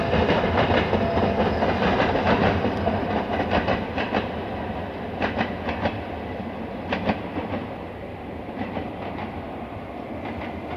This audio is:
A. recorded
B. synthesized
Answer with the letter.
A